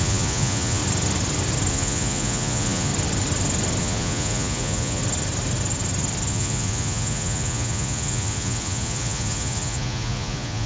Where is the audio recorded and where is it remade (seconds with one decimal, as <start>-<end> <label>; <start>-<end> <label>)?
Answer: 0.0-0.8 remade; 0.8-1.7 recorded; 1.7-2.9 remade; 2.9-3.8 recorded; 3.8-5.0 remade; 5.0-6.3 recorded; 6.3-10.7 remade